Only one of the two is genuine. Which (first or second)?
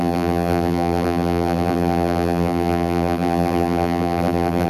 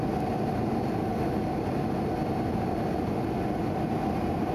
second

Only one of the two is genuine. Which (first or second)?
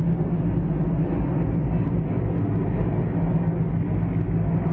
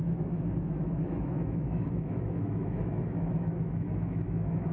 first